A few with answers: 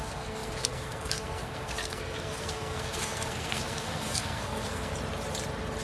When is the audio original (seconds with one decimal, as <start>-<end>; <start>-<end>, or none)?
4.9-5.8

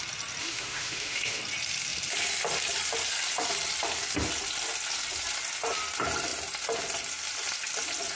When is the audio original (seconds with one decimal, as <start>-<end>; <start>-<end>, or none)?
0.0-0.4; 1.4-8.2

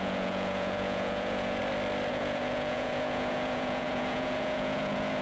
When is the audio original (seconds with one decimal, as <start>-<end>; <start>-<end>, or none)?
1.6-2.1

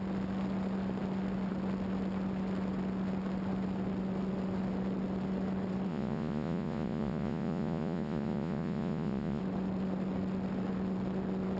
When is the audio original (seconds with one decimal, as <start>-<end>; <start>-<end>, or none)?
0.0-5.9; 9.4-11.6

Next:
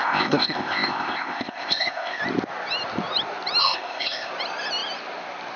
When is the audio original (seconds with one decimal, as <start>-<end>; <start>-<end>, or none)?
2.2-3.6; 4.3-5.6

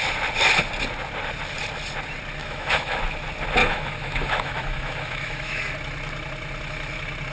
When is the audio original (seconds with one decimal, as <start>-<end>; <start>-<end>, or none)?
0.0-2.4; 3.0-3.6; 5.6-7.3

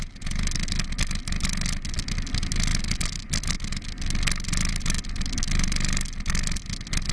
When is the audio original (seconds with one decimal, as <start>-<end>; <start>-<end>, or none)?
0.0-7.1